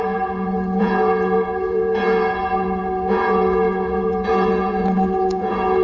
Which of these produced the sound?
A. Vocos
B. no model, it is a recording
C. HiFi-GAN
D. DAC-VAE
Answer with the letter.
A